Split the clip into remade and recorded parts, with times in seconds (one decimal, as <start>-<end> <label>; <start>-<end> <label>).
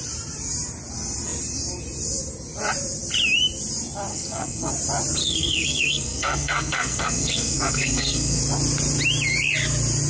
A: 0.0-4.1 recorded; 4.1-4.7 remade; 4.7-5.2 recorded; 5.2-8.4 remade; 8.4-10.1 recorded